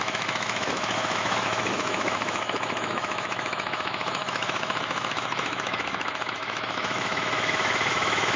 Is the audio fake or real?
fake